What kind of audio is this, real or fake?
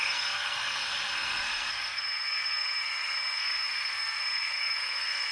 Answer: fake